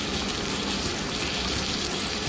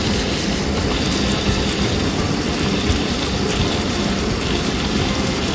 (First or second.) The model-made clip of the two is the second